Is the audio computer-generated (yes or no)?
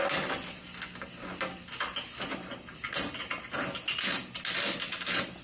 no